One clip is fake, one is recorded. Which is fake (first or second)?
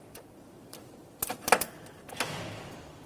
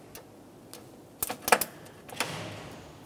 first